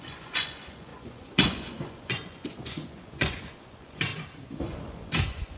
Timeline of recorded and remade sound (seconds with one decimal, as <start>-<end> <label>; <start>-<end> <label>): 0.0-4.1 remade; 4.1-4.6 recorded; 4.6-5.6 remade